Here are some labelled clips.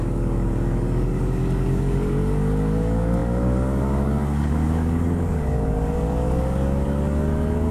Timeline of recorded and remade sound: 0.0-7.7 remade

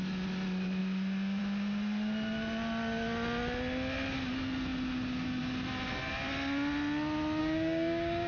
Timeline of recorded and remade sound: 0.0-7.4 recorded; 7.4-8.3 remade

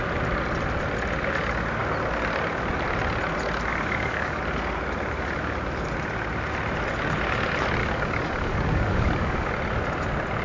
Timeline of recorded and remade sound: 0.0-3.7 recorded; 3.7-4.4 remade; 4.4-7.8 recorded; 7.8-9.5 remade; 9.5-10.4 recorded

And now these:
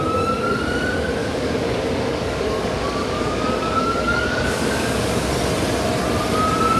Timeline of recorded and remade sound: 0.0-1.2 recorded; 1.2-5.3 remade; 5.3-6.8 recorded

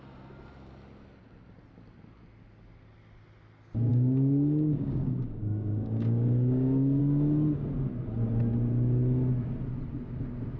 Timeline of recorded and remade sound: 0.0-3.9 recorded; 3.9-7.0 remade; 7.0-10.6 recorded

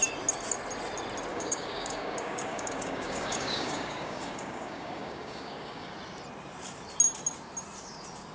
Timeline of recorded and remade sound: 0.0-1.3 recorded; 1.3-5.9 remade; 5.9-8.3 recorded